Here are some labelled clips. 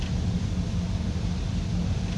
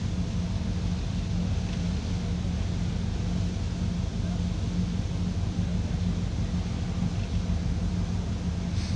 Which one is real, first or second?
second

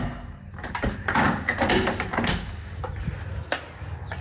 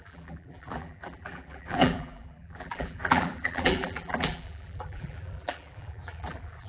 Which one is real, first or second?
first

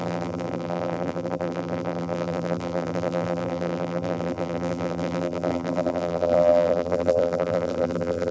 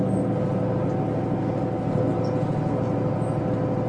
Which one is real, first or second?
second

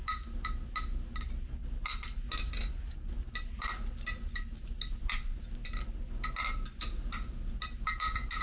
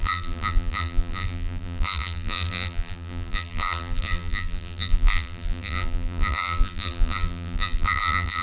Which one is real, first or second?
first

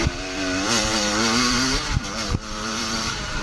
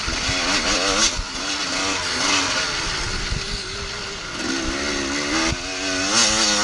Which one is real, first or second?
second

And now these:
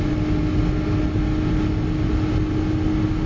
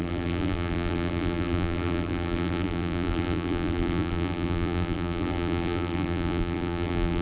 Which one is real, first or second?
first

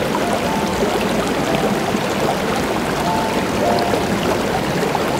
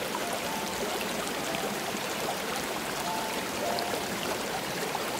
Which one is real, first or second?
first